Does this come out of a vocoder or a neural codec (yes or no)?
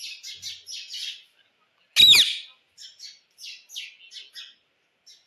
no